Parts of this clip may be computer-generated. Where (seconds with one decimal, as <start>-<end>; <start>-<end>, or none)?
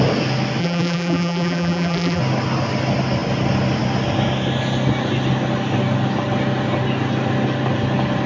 0.6-2.2